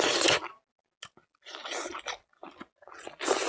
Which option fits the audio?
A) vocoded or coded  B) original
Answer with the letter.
B